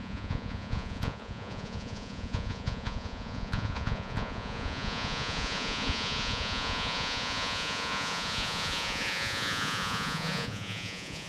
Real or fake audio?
fake